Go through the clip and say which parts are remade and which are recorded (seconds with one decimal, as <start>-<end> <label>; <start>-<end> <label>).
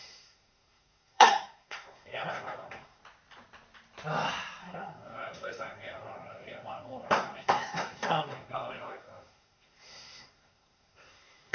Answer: 0.0-3.0 remade; 3.0-4.6 recorded; 4.6-11.5 remade